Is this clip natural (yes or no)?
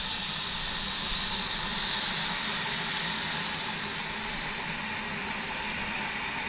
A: yes